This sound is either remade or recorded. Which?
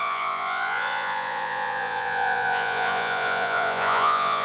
remade